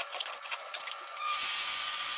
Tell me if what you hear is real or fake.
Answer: fake